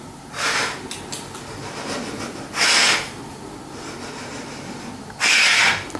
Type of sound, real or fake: real